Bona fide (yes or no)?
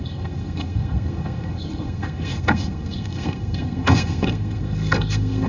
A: no